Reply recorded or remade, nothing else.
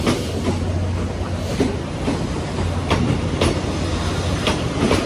recorded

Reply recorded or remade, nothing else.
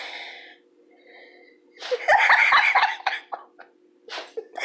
recorded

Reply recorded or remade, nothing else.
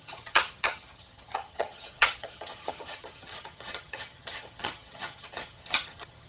remade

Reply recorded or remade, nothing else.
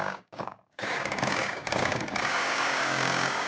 remade